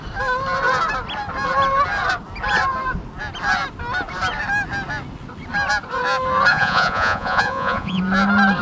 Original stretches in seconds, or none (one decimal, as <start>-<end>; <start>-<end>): 0.0-6.5; 8.0-8.6

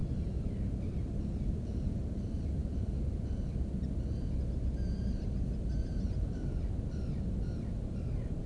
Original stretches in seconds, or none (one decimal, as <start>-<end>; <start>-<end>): 0.0-8.5